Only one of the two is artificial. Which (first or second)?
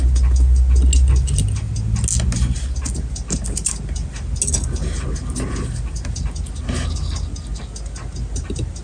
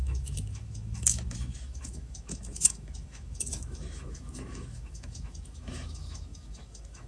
second